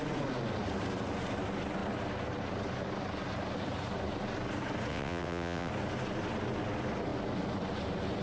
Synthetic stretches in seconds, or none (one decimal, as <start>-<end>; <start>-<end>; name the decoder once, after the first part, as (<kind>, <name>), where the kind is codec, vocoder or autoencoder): 4.9-5.7 (vocoder, WaveNeXt)